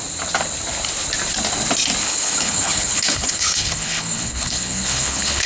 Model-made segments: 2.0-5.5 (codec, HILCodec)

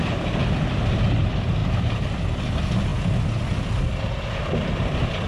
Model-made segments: 0.4-1.0 (vocoder, BigVGAN v2); 1.6-2.2

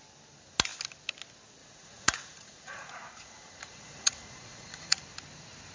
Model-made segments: 1.6-5.0 (vocoder, Vocos)

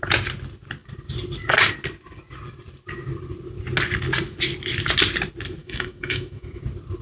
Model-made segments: 5.6-6.6 (autoencoder, DAC-VAE)

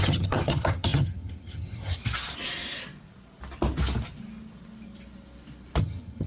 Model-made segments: 0.0-2.0 (vocoder, HiFi-GAN); 5.8-6.3

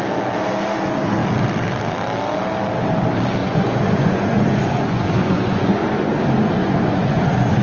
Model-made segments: 3.4-6.1 (vocoder, Vocos); 6.6-7.6

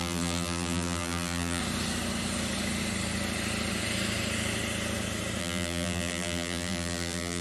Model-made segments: 0.0-1.6 (vocoder, BigVGAN v2); 5.4-7.4